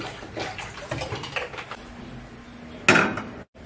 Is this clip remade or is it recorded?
recorded